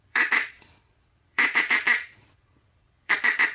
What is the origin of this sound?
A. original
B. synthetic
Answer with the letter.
B